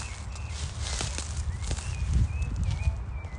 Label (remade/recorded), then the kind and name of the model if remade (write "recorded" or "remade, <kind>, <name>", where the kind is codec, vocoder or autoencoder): recorded